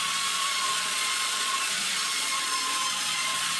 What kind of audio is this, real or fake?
fake